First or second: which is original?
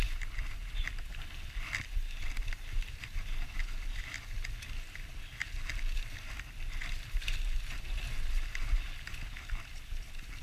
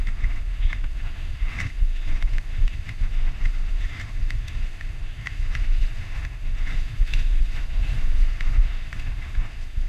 first